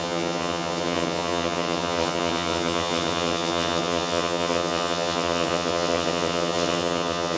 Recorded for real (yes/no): no